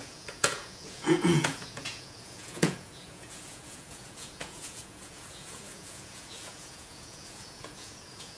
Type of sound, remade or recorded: remade